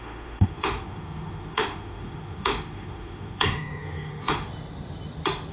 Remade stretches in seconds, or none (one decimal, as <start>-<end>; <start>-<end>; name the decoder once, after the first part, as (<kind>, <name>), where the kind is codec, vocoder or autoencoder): 0.0-4.5 (autoencoder, DAC-VAE)